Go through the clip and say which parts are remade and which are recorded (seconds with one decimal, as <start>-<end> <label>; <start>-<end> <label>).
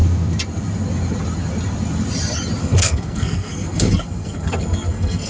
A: 0.0-2.6 recorded; 2.6-5.3 remade